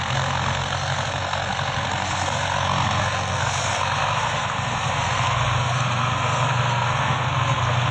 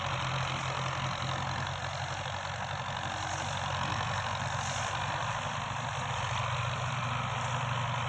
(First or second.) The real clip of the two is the second